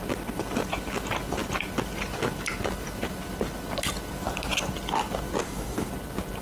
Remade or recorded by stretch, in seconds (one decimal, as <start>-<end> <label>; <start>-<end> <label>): 0.0-5.4 recorded; 5.4-5.9 remade; 5.9-6.4 recorded